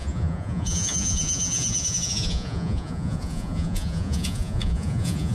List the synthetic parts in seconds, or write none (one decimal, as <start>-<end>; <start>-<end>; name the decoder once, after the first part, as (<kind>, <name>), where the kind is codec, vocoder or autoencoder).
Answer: 0.0-5.3 (vocoder, Vocos)